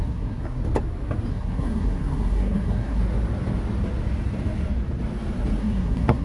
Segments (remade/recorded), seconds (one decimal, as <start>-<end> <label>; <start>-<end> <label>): 0.0-0.6 remade; 0.6-1.3 recorded; 1.3-3.0 remade; 3.0-5.6 recorded; 5.6-6.2 remade